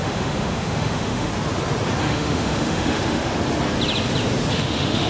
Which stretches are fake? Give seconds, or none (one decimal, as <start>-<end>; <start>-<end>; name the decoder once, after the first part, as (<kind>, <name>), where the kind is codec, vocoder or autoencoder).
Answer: 0.0-1.3 (autoencoder, DAC-VAE); 2.0-3.3; 4.5-5.1